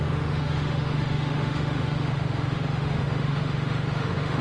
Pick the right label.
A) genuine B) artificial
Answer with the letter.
B